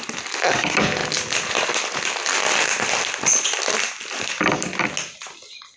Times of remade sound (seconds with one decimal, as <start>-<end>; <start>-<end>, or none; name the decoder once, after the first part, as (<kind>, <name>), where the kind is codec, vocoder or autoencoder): none

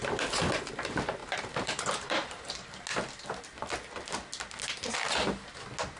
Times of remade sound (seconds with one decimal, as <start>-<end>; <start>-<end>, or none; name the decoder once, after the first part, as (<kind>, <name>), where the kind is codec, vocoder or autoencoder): 1.2-2.8 (vocoder, BigVGAN v2)